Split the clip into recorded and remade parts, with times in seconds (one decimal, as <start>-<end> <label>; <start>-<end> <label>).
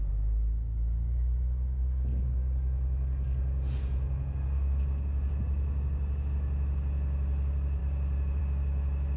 0.0-9.2 recorded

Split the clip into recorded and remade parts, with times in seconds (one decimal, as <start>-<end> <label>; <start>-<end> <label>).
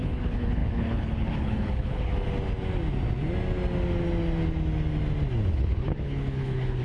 0.0-2.1 remade; 2.1-5.5 recorded; 5.5-6.8 remade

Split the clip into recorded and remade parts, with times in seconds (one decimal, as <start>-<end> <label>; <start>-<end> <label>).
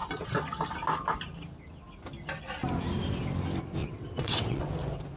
0.0-3.8 recorded; 3.8-4.7 remade; 4.7-5.2 recorded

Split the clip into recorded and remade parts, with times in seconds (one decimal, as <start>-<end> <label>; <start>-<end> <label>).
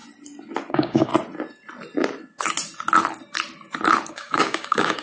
0.0-0.7 recorded; 0.7-1.1 remade; 1.1-4.1 recorded; 4.1-5.0 remade